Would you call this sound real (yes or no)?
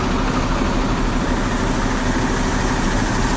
yes